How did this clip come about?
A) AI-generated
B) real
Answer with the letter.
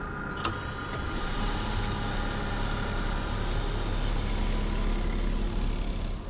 B